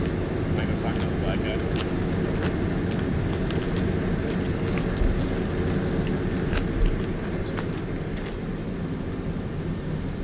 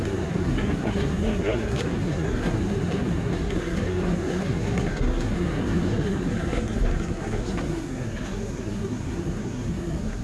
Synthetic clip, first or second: second